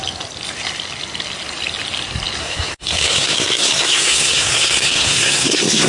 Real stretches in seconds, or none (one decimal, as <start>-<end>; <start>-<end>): 0.0-2.4